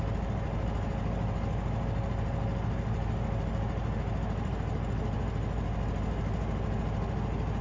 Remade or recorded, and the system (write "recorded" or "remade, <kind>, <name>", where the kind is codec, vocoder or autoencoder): recorded